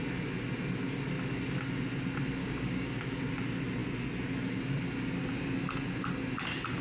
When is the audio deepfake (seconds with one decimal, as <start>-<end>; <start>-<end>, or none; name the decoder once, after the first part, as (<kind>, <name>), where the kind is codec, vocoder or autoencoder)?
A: 2.4-3.3 (codec, DAC)